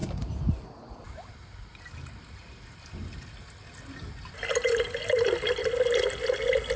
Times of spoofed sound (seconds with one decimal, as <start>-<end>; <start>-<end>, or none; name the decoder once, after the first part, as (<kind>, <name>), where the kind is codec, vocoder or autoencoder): none

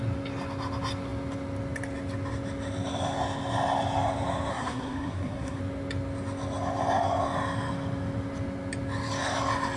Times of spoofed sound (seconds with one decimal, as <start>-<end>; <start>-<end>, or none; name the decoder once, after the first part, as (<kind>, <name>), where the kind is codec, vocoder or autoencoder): 4.5-5.6 (codec, SNAC)

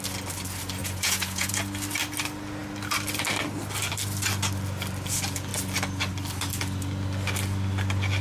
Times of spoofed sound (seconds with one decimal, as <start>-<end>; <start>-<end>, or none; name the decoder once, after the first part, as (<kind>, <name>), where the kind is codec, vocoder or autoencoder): 0.8-1.5 (vocoder, Vocos)

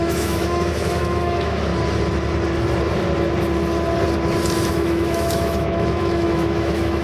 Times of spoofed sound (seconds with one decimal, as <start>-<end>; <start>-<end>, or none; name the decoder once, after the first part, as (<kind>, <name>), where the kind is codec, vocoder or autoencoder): 0.0-1.7 (autoencoder, DAC-VAE); 4.7-7.0

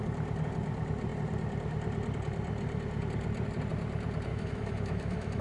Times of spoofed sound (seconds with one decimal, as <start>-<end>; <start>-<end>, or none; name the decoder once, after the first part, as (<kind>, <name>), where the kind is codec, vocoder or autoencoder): 4.3-5.4 (autoencoder, DAC-VAE)